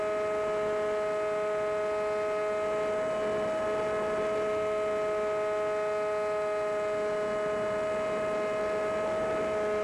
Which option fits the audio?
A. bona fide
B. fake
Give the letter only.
A